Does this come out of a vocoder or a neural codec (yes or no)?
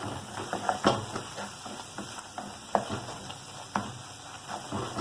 no